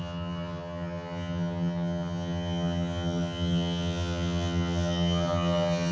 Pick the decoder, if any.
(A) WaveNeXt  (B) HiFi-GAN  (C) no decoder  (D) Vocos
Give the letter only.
B